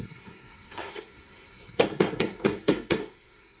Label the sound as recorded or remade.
remade